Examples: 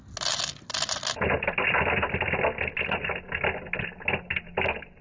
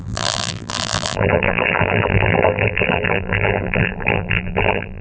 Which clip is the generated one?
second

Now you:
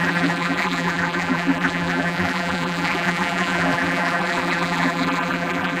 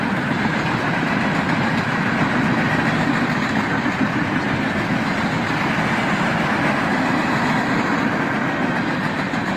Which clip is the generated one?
first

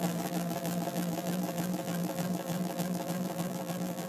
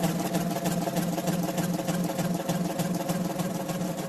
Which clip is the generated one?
first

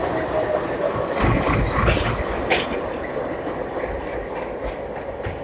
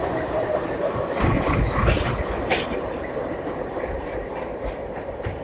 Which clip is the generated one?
second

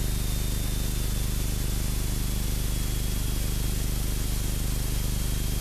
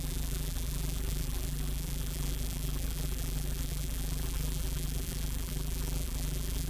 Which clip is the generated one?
second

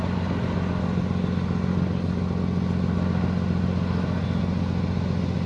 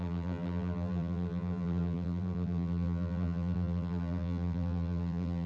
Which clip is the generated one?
second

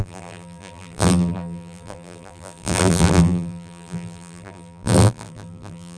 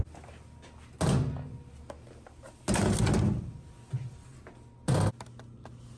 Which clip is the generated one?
first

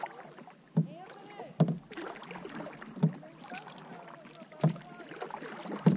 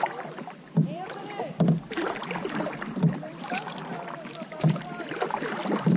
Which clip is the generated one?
second